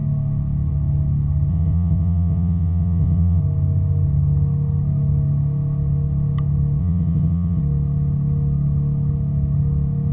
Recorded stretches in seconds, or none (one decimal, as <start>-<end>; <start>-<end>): 0.0-1.5; 3.4-6.8; 7.6-10.1